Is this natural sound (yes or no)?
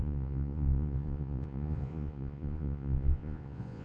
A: no